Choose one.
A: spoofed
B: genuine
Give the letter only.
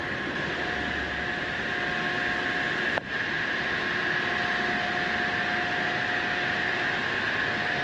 B